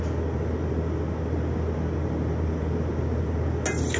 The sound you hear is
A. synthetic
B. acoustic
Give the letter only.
B